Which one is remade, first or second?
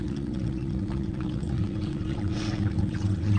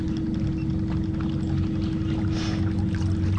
first